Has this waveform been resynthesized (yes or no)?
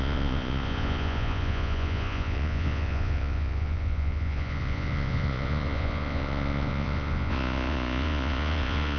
yes